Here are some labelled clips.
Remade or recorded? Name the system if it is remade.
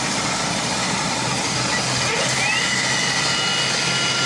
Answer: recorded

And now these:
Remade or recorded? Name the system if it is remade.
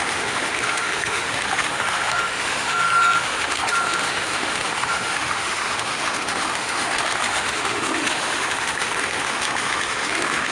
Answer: remade, autoencoder, DAC-VAE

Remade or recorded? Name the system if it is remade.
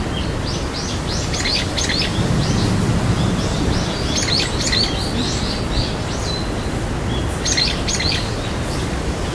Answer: recorded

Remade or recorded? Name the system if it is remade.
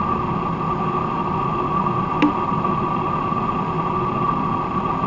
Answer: recorded